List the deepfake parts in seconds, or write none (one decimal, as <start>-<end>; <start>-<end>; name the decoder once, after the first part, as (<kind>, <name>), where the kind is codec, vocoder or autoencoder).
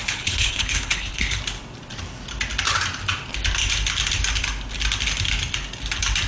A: 0.0-1.4 (codec, HILCodec)